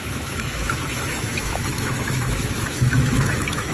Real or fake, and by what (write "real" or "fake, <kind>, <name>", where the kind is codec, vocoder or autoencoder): fake, autoencoder, DAC-VAE